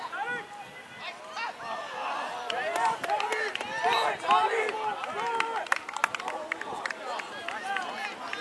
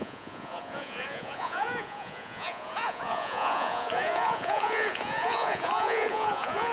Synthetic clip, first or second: second